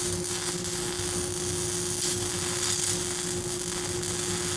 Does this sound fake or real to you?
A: real